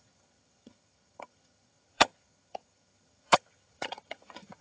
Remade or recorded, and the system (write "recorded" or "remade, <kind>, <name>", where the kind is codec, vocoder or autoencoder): remade, vocoder, HiFi-GAN